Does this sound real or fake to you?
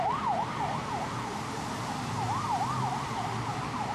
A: real